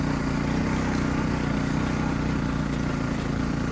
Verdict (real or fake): real